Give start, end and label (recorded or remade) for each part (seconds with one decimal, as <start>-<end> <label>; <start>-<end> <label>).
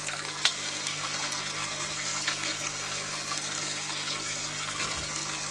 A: 0.0-5.5 remade